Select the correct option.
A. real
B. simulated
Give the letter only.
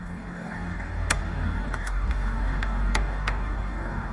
B